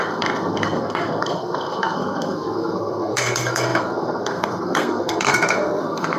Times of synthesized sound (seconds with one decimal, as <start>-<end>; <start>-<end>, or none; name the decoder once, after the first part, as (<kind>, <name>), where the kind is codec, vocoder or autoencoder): 0.0-6.2 (codec, SNAC)